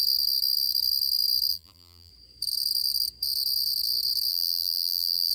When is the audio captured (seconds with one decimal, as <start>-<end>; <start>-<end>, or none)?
0.0-1.5; 2.1-4.3